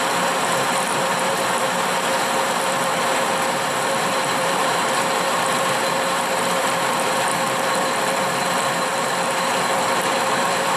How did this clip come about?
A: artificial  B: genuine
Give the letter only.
A